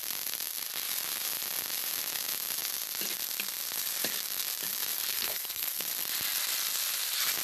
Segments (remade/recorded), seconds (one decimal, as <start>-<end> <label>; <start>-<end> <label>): 0.0-5.1 recorded; 5.1-5.8 remade; 5.8-7.4 recorded